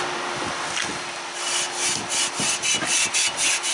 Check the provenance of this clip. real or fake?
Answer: real